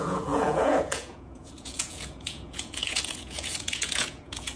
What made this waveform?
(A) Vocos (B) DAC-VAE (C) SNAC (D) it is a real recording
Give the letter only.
A